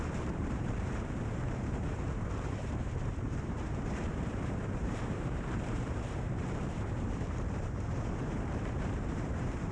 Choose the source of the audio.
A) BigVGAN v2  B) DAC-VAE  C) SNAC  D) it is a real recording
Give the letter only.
A